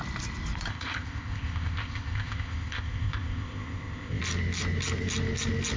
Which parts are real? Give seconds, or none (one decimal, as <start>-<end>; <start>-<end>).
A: 0.0-0.7; 4.2-5.8